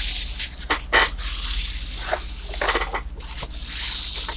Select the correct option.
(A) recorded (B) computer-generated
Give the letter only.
A